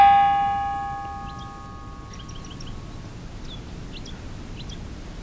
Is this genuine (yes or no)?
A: yes